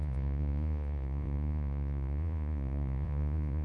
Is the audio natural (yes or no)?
no